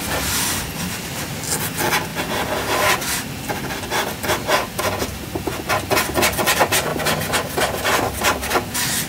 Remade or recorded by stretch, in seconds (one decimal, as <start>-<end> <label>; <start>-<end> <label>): 0.0-9.1 recorded